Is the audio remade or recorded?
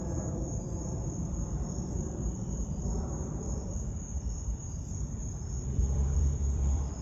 remade